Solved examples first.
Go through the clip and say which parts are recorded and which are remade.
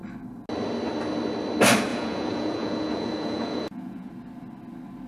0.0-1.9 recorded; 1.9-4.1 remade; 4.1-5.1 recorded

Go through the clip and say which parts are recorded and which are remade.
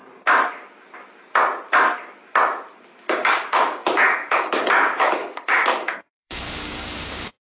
0.0-3.0 recorded; 3.0-7.4 remade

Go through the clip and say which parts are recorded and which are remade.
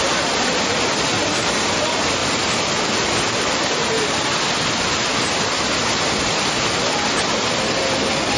0.0-8.4 recorded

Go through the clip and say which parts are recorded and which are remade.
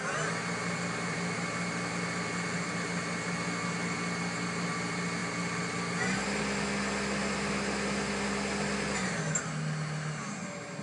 0.0-10.8 recorded